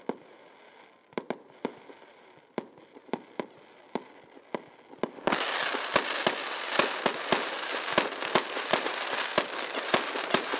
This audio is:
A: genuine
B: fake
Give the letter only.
A